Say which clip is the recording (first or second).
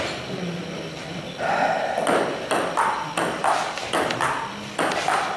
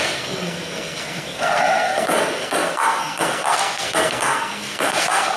first